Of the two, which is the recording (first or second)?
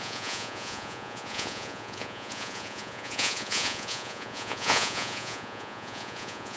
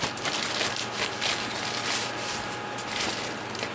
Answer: second